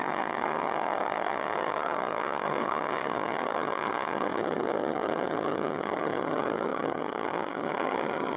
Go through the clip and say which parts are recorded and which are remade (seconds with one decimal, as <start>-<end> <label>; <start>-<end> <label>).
0.0-8.4 remade